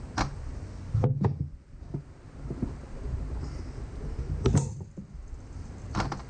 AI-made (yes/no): no